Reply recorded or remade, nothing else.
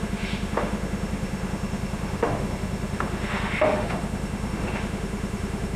remade